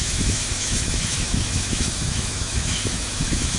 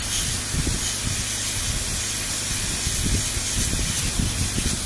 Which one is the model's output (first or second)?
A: first